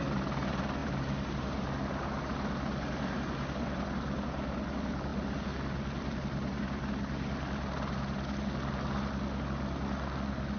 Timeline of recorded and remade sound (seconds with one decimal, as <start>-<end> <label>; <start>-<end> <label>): 0.0-10.6 recorded